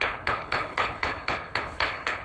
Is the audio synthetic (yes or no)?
yes